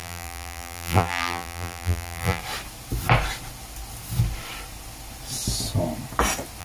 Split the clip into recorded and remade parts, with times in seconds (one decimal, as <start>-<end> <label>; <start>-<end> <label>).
0.0-2.4 remade; 2.4-6.6 recorded

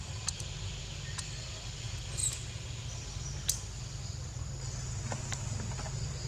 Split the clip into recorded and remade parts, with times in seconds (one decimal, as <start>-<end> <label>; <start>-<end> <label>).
0.0-0.8 remade; 0.8-1.6 recorded; 1.6-2.2 remade; 2.2-6.3 recorded

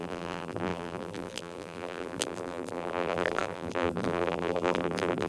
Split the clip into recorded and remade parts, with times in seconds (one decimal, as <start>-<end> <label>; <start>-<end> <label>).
0.0-5.3 remade

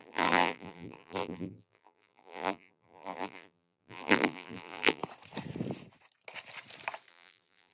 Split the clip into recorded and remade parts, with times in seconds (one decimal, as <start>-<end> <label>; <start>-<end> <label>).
0.0-5.0 remade; 5.0-7.1 recorded; 7.1-7.7 remade

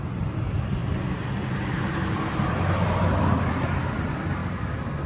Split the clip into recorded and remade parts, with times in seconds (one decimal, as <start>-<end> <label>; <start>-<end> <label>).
0.0-0.8 recorded; 0.8-3.5 remade; 3.5-5.1 recorded

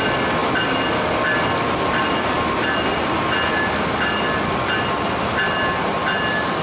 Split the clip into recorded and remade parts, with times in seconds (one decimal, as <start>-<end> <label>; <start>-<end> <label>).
0.0-6.6 recorded

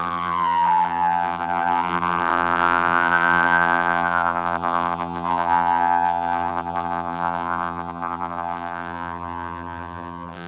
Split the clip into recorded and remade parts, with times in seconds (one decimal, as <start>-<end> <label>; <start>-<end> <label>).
0.0-10.5 remade